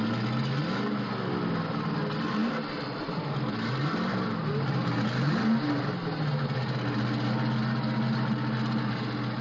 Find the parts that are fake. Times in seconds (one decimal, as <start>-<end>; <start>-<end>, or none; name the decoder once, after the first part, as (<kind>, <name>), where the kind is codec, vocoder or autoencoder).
none